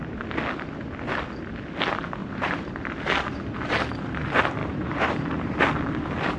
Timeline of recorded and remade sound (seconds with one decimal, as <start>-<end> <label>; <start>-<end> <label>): 0.0-2.2 recorded; 2.2-2.7 remade; 2.7-4.6 recorded; 4.6-5.6 remade; 5.6-6.4 recorded